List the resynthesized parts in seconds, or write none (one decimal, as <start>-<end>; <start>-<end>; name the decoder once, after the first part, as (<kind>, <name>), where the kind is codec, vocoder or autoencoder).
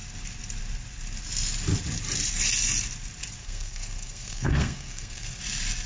3.4-5.4 (codec, SNAC)